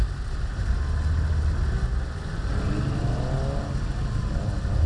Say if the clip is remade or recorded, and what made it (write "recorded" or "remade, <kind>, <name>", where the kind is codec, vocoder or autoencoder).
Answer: recorded